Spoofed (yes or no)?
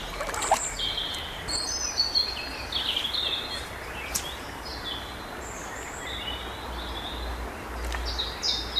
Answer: no